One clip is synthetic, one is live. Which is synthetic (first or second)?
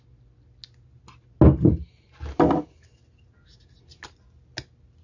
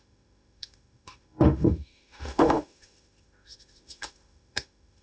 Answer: second